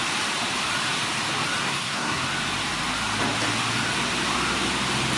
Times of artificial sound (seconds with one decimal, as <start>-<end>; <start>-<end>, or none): 1.6-2.2